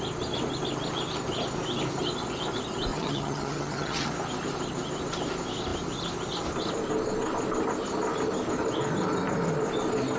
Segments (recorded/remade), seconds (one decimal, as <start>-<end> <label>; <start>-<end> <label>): 0.0-2.9 recorded; 2.9-4.1 remade; 4.1-10.2 recorded